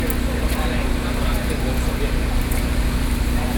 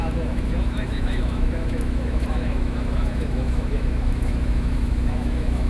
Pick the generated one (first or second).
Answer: second